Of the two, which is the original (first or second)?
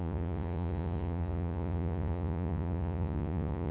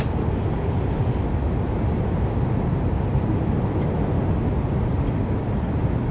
second